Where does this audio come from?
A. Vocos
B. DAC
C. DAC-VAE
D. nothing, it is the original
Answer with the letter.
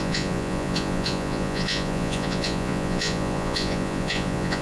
A